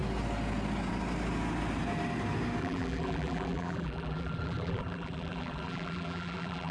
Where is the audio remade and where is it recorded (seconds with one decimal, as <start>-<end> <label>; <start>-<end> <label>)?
0.0-2.6 recorded; 2.6-6.7 remade